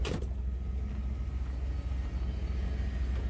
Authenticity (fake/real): real